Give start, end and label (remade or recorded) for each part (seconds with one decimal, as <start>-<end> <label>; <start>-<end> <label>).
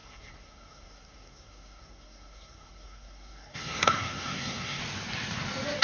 0.0-4.8 remade; 4.8-5.8 recorded